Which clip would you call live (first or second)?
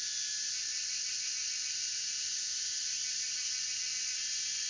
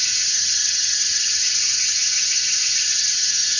first